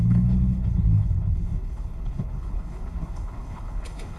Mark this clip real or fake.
fake